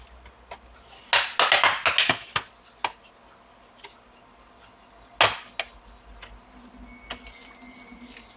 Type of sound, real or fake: real